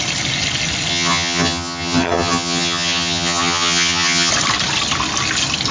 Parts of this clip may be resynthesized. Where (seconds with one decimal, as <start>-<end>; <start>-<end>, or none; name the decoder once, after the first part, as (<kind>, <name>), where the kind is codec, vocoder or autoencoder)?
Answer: 0.9-4.3 (vocoder, HiFi-GAN)